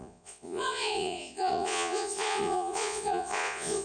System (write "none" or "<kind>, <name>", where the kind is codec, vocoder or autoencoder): vocoder, Vocos